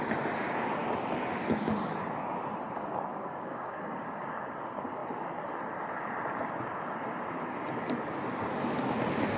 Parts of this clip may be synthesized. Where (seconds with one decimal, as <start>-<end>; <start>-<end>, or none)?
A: 3.1-4.3